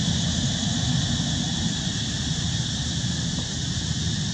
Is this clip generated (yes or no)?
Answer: no